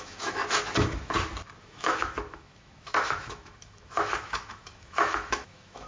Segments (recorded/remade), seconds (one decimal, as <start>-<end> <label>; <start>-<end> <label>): 0.0-0.4 remade; 0.4-1.6 recorded; 1.6-5.9 remade